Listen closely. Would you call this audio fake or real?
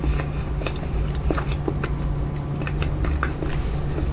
real